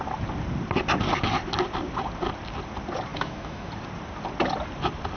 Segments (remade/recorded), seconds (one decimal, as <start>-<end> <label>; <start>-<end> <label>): 0.0-3.1 recorded; 3.1-3.7 remade; 3.7-5.2 recorded